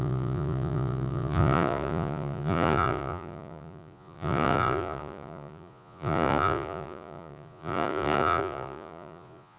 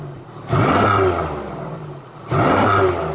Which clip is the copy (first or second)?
first